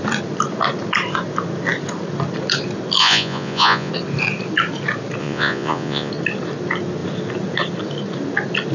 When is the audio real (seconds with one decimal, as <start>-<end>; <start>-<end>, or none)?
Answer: 0.0-3.0; 3.9-5.2; 6.1-8.7